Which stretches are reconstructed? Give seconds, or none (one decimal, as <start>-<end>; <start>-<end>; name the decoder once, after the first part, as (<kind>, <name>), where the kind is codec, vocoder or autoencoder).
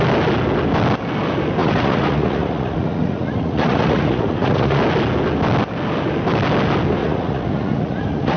1.6-4.8 (vocoder, Vocos); 7.0-8.4